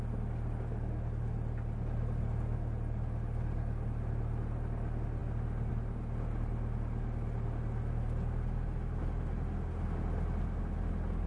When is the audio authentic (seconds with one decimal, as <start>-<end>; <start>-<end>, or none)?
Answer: 0.0-11.3

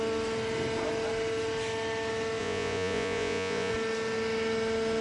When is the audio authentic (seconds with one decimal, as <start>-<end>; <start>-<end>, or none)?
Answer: 0.0-2.4; 3.7-5.0

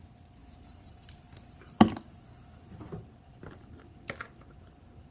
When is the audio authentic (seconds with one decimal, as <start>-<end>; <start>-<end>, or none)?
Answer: 0.0-5.1

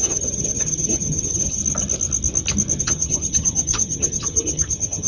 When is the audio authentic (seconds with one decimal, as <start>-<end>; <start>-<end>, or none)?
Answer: 1.6-2.8

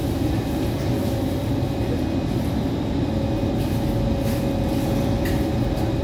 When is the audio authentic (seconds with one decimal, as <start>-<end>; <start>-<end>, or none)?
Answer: 0.8-6.0